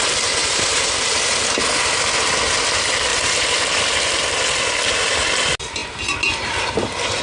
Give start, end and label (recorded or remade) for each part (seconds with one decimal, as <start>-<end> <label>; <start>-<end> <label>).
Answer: 0.0-0.4 recorded; 0.4-1.4 remade; 1.4-3.1 recorded; 3.1-4.9 remade; 4.9-7.2 recorded